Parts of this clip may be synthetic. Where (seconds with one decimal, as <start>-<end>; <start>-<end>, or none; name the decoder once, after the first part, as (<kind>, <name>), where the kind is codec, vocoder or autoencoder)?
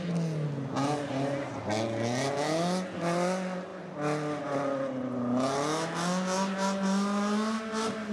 none